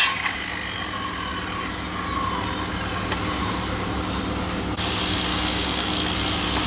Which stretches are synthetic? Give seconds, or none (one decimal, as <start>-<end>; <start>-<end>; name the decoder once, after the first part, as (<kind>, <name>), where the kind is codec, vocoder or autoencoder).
5.3-5.9 (codec, DAC)